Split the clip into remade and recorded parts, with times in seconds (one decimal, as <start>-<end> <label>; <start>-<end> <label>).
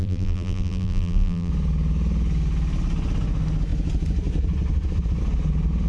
0.0-1.5 remade; 1.5-5.9 recorded